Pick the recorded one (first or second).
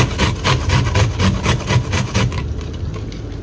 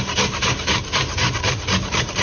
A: first